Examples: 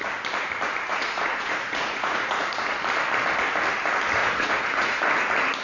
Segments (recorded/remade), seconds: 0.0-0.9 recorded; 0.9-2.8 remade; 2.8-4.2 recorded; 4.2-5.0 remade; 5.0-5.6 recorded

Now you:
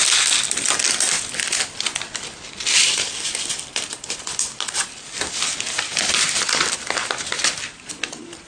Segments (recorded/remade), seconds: 0.0-8.5 recorded

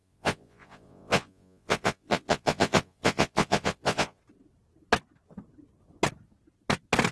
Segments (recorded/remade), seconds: 0.0-4.2 remade; 4.2-7.1 recorded

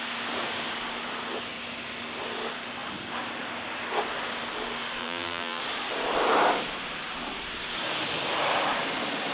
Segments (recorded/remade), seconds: 0.0-5.0 recorded; 5.0-5.6 remade; 5.6-9.3 recorded

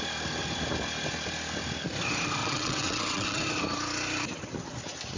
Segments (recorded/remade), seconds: 0.0-2.4 recorded; 2.4-3.4 remade; 3.4-5.2 recorded

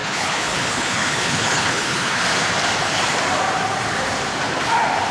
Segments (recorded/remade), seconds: 0.0-2.2 remade; 2.2-5.1 recorded

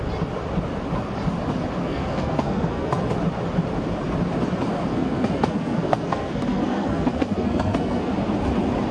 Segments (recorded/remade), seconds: 0.0-1.8 recorded; 1.8-3.0 remade; 3.0-4.9 recorded; 4.9-8.1 remade; 8.1-8.9 recorded

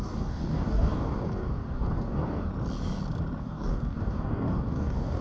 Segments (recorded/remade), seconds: 0.0-2.5 remade; 2.5-3.4 recorded; 3.4-5.2 remade